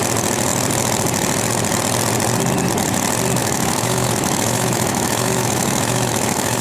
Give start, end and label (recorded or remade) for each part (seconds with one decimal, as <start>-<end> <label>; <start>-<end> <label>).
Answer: 0.0-3.4 recorded; 3.4-6.6 remade